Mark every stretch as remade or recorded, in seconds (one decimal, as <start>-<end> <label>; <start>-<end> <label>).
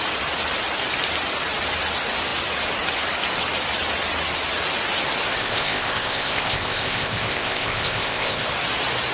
0.0-5.4 recorded; 5.4-8.5 remade; 8.5-9.1 recorded